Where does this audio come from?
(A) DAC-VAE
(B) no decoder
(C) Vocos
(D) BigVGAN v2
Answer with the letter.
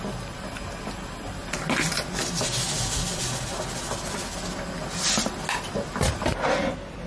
B